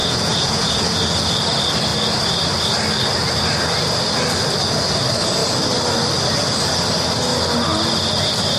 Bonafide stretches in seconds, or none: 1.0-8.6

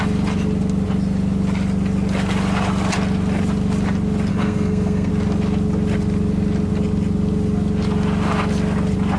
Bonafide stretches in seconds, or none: 0.0-4.3; 5.1-9.2

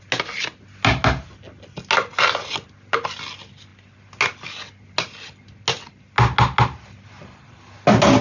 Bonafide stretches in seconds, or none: 0.0-8.2

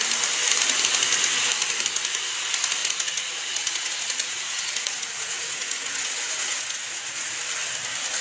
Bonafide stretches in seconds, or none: 0.0-2.8; 7.3-8.2

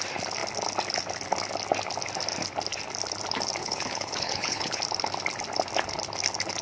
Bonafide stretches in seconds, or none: 0.0-3.6; 4.8-6.6

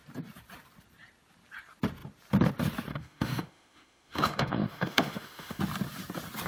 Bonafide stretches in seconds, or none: 0.0-2.9; 5.6-6.5